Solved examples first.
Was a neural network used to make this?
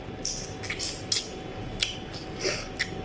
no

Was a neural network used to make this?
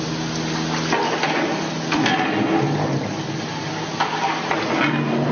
no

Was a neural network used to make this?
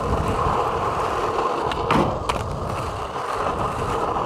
no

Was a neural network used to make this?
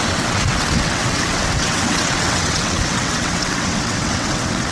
yes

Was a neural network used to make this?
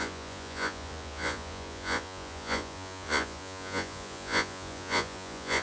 yes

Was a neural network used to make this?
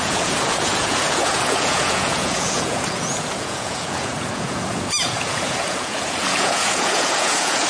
yes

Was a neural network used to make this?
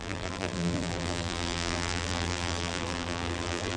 yes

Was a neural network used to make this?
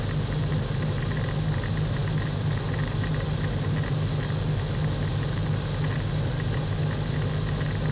no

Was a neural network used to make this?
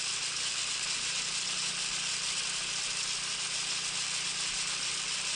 no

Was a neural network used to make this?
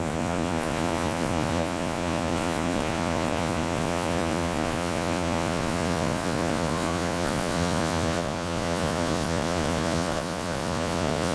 yes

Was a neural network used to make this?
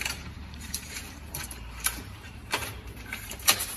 yes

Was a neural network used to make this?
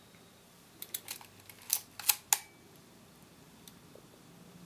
no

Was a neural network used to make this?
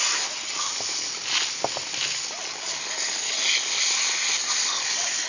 no